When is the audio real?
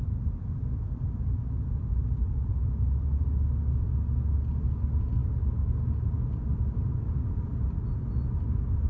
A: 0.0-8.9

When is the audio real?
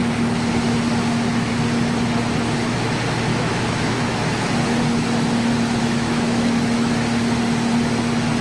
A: 0.0-3.3; 4.2-5.8; 6.9-8.4